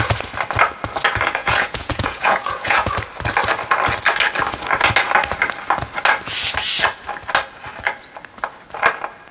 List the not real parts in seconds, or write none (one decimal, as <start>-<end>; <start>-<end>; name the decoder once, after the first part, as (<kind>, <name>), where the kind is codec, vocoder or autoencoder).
1.4-2.9 (vocoder, Vocos)